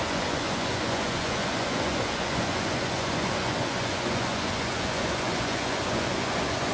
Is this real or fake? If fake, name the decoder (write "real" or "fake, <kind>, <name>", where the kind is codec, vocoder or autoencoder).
fake, vocoder, Vocos